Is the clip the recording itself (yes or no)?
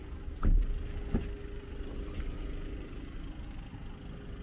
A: yes